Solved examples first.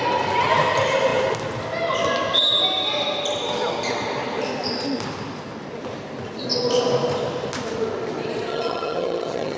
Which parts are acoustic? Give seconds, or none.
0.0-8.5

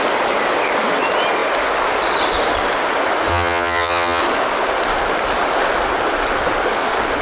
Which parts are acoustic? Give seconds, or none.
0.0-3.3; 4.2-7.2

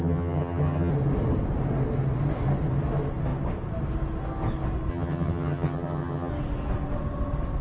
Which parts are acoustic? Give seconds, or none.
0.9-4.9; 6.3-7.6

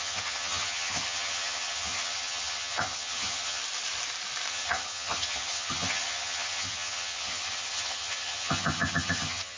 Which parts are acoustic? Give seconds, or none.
3.6-4.5

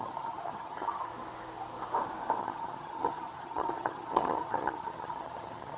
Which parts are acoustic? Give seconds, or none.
1.1-2.4

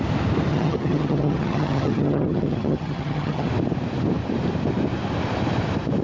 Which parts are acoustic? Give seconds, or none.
0.0-0.5; 3.5-6.0